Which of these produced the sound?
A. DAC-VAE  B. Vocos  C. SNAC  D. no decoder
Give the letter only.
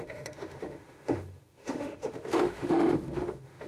A